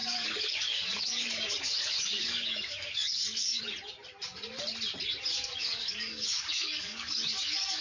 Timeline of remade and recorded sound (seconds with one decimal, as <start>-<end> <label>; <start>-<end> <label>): 0.0-3.6 remade; 3.6-5.3 recorded; 5.3-7.8 remade